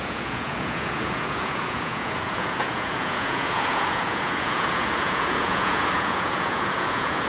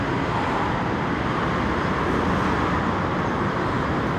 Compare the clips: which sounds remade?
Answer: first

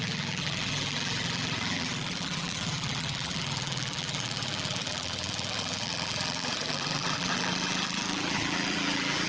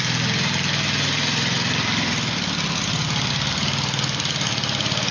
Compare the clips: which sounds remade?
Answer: first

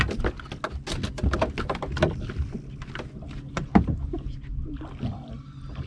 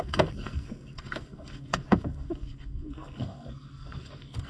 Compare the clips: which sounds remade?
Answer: second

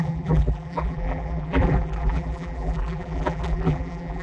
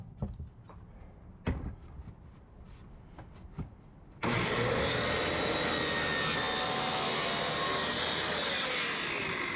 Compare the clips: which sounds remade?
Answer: first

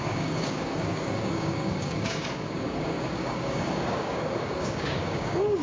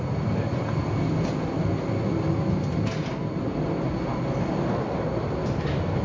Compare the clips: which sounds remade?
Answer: first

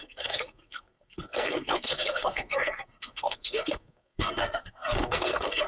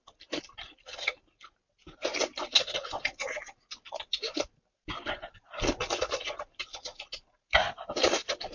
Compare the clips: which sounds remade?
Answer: first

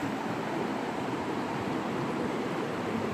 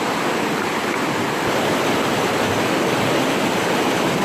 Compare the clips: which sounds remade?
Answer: first